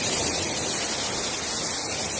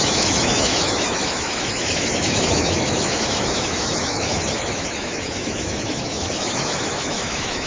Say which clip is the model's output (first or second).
second